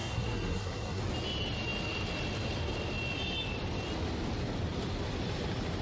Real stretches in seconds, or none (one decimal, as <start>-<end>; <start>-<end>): 1.0-5.8